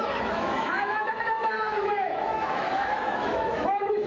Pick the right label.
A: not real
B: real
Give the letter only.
A